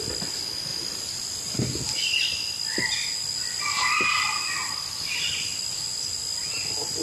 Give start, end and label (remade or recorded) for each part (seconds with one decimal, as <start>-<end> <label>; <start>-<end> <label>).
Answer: 0.0-7.0 recorded